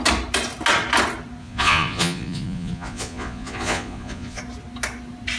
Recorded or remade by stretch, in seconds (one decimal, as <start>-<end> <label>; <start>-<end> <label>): 0.0-1.4 recorded; 1.4-4.4 remade; 4.4-5.4 recorded